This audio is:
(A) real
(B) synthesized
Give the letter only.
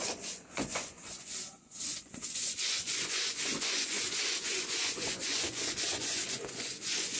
B